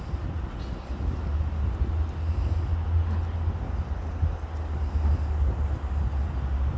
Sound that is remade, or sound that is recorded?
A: recorded